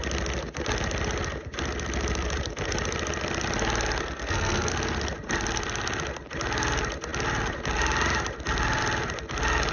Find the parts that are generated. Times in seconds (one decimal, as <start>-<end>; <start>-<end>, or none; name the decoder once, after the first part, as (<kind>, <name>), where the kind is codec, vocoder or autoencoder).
4.0-4.7 (codec, SNAC)